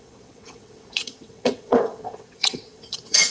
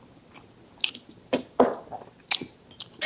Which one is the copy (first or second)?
first